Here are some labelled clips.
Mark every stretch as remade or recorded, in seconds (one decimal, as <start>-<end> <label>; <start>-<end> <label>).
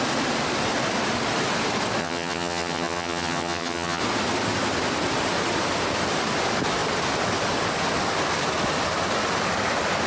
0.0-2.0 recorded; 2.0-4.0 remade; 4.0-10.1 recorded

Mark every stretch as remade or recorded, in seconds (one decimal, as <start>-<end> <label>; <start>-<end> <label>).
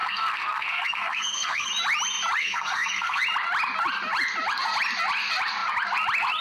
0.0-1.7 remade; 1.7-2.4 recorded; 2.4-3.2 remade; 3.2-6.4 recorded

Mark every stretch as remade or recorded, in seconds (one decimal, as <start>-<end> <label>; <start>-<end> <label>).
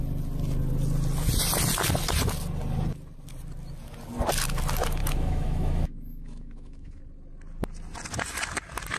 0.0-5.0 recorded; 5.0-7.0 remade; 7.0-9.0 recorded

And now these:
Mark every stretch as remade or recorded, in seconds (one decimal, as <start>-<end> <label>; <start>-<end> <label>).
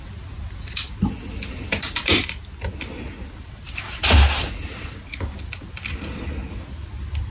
0.0-7.3 recorded